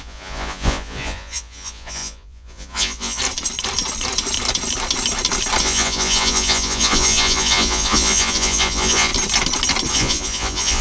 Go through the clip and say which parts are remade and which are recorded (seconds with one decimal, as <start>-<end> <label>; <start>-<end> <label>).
0.0-3.2 remade; 3.2-5.6 recorded; 5.6-9.1 remade; 9.1-9.9 recorded; 9.9-10.8 remade